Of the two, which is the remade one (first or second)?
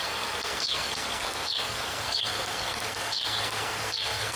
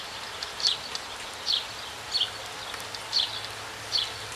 first